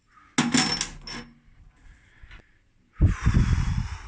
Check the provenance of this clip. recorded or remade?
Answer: recorded